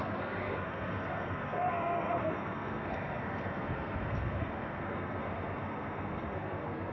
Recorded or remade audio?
remade